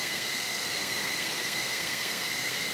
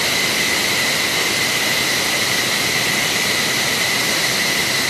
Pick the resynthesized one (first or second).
first